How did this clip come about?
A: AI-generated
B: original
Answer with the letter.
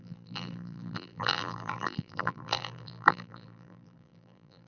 A